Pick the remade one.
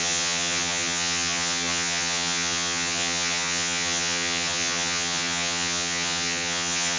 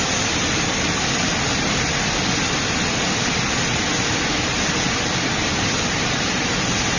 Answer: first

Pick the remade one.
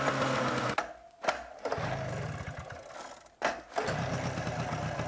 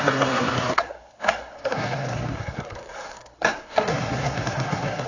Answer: second